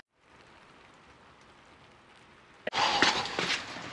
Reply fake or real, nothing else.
real